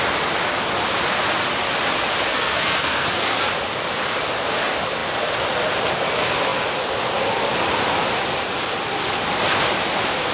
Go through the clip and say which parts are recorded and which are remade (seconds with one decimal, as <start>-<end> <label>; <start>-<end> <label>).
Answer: 0.0-2.3 recorded; 2.3-3.5 remade; 3.5-10.3 recorded